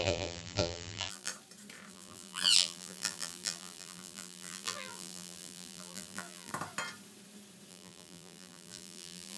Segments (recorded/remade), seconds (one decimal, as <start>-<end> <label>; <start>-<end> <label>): 0.0-1.3 remade; 1.3-1.9 recorded; 1.9-6.5 remade; 6.5-7.7 recorded; 7.7-9.4 remade

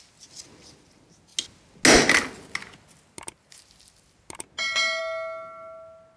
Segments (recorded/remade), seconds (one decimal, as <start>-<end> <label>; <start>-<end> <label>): 0.0-6.2 recorded

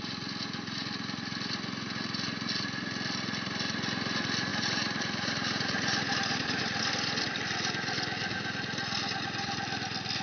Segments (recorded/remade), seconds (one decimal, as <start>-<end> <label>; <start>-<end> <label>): 0.0-4.5 recorded; 4.5-6.6 remade; 6.6-10.2 recorded

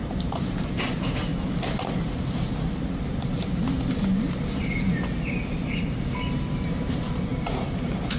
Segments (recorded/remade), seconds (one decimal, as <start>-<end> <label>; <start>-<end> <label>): 0.0-1.3 remade; 1.3-5.7 recorded; 5.7-8.2 remade

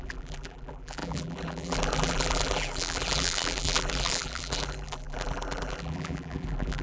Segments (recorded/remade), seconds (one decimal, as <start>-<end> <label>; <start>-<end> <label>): 0.0-6.8 remade

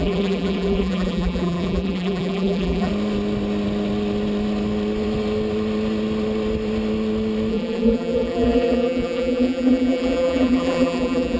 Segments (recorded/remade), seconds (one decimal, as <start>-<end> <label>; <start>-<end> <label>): 0.0-2.9 remade; 2.9-7.5 recorded; 7.5-11.4 remade

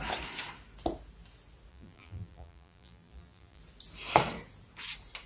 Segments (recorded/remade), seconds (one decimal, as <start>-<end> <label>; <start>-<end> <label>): 0.0-1.7 recorded; 1.7-3.6 remade; 3.6-5.3 recorded